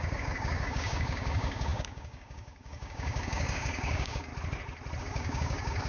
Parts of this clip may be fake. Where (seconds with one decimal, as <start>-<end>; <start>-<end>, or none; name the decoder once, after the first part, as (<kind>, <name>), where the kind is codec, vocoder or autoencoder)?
0.0-4.3 (codec, DAC); 5.0-5.9